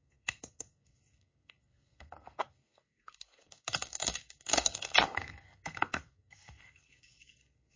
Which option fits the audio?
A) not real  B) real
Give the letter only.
A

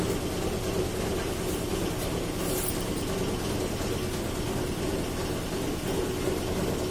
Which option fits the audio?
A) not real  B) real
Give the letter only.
B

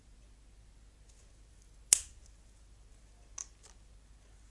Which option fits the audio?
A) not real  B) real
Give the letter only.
B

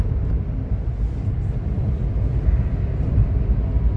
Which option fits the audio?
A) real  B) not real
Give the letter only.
A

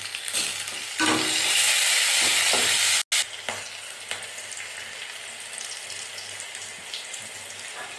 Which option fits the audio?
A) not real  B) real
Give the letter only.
B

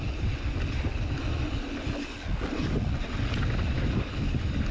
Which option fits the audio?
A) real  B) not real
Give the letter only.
A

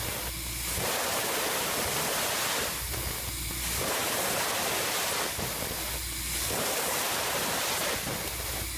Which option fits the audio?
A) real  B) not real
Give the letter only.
A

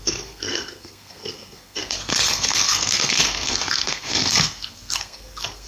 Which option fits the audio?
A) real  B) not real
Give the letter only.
B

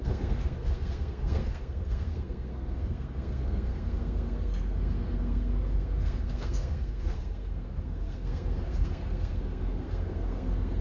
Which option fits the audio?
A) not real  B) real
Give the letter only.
A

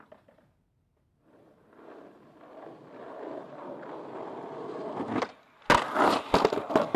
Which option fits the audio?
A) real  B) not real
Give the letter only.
A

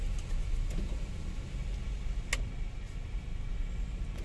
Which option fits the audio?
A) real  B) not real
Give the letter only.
A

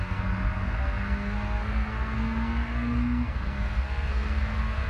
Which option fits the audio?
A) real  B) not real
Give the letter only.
B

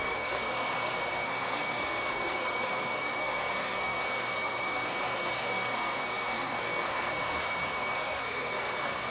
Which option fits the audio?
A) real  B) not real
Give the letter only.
B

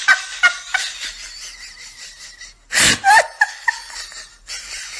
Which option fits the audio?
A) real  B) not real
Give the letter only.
A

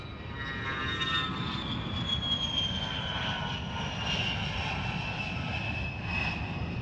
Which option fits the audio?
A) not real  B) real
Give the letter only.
B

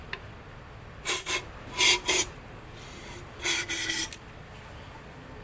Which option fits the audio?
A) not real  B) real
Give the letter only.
B